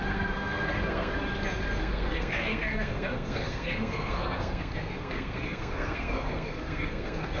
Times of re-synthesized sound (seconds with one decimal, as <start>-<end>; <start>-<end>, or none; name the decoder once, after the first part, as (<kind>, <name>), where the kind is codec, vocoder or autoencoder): 0.0-1.1 (codec, SNAC); 1.8-7.4